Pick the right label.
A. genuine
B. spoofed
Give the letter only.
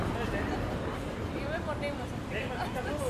A